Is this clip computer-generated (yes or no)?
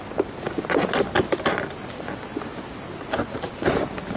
no